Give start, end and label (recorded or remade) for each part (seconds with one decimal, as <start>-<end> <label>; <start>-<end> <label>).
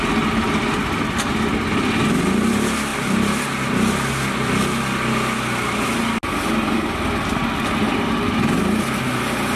0.0-9.6 recorded